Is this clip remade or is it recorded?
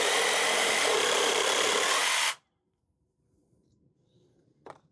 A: remade